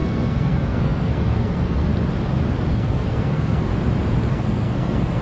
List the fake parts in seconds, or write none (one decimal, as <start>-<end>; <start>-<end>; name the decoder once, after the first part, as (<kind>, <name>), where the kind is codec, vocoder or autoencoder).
0.0-1.9 (codec, SNAC); 2.7-3.7; 4.3-5.2